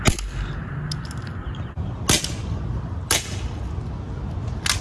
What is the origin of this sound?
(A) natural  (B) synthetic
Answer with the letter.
A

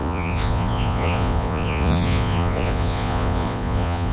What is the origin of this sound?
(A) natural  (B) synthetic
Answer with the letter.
B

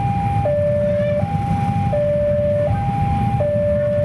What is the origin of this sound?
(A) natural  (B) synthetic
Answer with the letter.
A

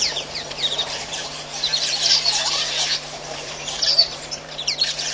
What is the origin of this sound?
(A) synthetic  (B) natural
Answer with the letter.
A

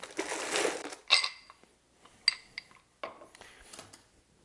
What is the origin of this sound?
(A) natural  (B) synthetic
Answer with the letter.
A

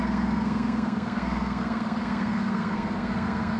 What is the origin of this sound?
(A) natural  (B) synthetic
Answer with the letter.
B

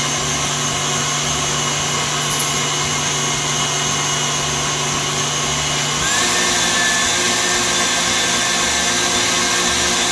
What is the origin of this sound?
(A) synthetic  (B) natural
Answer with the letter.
B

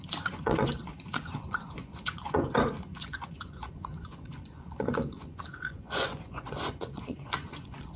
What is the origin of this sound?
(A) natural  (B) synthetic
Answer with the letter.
B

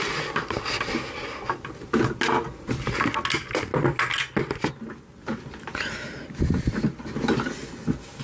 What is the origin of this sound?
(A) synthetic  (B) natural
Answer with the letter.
B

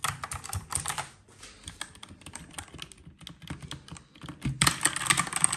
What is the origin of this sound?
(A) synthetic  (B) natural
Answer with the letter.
B